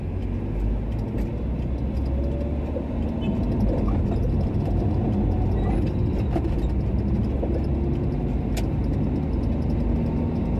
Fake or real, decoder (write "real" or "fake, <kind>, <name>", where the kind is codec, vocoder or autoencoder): real